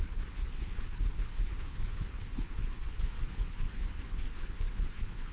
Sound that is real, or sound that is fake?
fake